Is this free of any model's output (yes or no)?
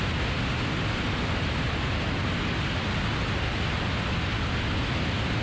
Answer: yes